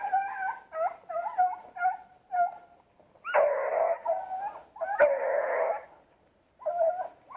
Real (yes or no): yes